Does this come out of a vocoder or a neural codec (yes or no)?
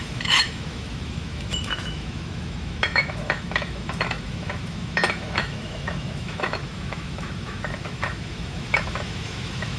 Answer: yes